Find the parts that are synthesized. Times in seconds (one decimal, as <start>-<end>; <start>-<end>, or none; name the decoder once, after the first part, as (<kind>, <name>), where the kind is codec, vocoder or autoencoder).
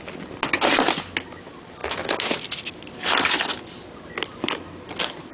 none